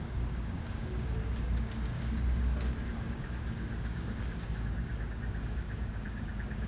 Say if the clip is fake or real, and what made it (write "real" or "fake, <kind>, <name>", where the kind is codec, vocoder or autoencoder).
fake, codec, DAC